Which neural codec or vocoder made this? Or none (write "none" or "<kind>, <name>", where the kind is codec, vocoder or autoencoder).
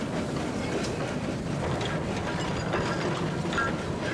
none